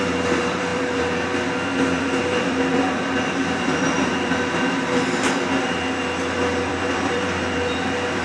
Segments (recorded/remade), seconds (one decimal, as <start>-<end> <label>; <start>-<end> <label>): 0.0-8.2 remade